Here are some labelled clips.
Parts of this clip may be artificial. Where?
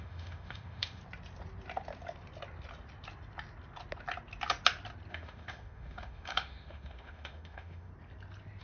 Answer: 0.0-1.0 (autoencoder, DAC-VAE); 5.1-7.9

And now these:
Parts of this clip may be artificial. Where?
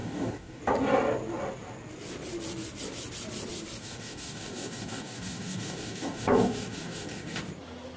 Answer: 0.0-0.6 (codec, DAC); 3.8-7.4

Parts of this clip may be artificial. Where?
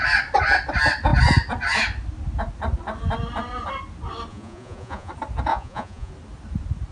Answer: 4.3-5.1 (vocoder, Vocos); 5.5-6.1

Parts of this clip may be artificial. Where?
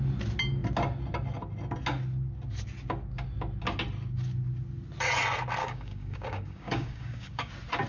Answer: 5.6-7.5 (codec, DAC)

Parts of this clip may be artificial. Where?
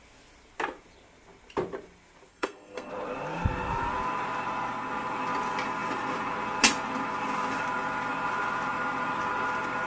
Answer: 2.3-2.9 (codec, SNAC)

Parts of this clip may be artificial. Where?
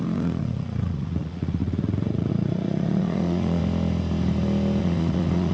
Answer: 0.0-3.6 (vocoder, Vocos); 4.8-5.5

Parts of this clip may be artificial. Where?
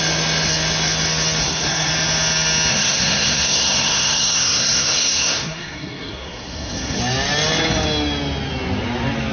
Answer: 1.4-1.9 (codec, SNAC); 2.7-7.0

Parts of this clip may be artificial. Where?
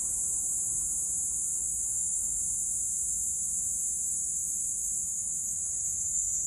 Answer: 1.5-2.4 (autoencoder, DAC-VAE); 4.4-6.5